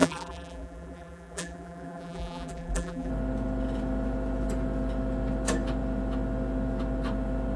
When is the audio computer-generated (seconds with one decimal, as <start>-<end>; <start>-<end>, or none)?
0.0-3.1